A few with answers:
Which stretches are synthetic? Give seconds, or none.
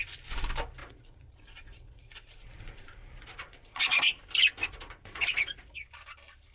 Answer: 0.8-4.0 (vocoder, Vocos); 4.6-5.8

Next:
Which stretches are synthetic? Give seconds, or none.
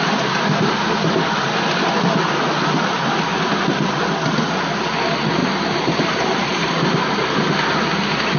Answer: 5.4-6.7 (vocoder, BigVGAN v2)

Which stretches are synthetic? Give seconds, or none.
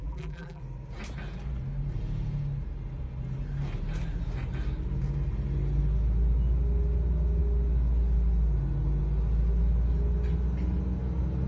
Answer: 0.0-0.6 (vocoder, BigVGAN v2)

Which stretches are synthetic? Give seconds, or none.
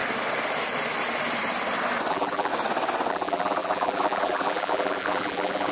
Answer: 2.1-2.5 (vocoder, BigVGAN v2); 3.1-5.7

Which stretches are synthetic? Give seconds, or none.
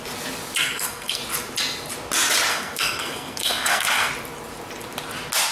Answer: 0.6-1.2 (codec, SNAC); 2.5-4.1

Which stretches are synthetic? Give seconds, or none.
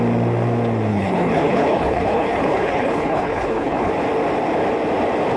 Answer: 0.9-3.9 (codec, HILCodec)